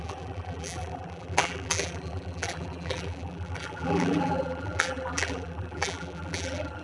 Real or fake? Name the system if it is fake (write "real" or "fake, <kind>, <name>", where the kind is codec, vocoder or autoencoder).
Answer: fake, vocoder, BigVGAN v2